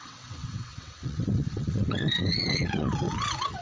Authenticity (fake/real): fake